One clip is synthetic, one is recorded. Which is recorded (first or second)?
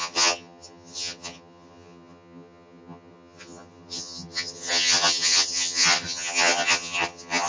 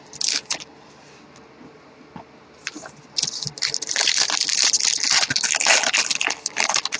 second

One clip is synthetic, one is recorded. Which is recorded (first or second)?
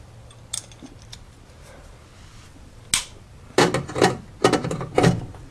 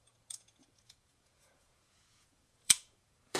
first